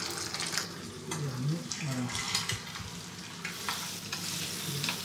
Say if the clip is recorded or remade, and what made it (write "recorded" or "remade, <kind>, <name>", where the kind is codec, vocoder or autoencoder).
recorded